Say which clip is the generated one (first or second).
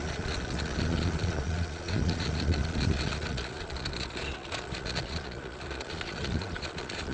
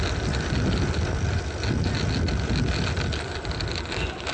first